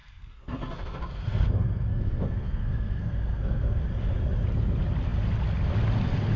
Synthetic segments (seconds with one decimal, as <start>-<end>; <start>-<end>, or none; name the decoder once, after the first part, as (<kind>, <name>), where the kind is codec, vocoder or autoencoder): 0.0-3.8 (codec, SNAC)